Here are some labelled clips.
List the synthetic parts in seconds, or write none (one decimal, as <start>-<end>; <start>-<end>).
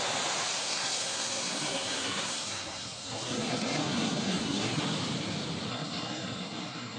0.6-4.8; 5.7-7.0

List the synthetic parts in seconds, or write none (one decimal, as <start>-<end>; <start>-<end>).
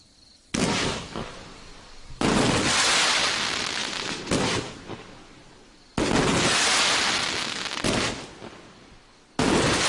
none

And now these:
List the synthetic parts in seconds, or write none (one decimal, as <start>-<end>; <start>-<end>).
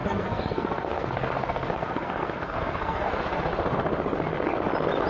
0.0-3.1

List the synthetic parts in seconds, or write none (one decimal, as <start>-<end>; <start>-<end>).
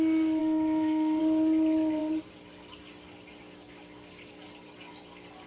0.4-1.2